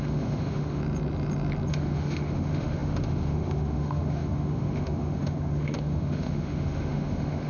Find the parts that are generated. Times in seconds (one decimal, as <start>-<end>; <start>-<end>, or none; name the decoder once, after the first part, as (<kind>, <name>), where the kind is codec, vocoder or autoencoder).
0.0-0.8 (autoencoder, DAC-VAE); 1.7-7.5